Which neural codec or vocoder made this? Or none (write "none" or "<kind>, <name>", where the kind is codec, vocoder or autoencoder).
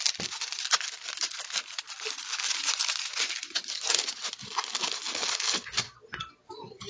none